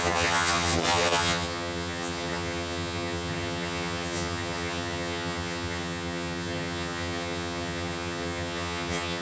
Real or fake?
fake